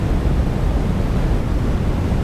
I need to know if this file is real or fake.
real